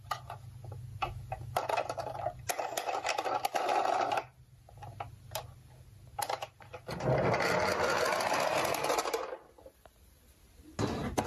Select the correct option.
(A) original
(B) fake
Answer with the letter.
A